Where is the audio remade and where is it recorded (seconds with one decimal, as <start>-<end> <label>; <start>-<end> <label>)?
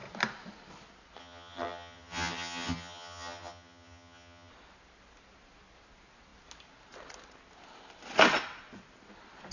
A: 0.0-1.2 recorded; 1.2-4.5 remade; 4.5-9.5 recorded